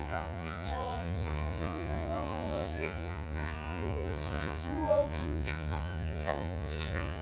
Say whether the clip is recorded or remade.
remade